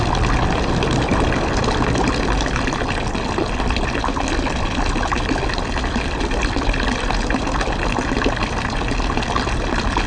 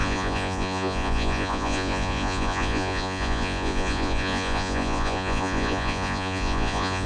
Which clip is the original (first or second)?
first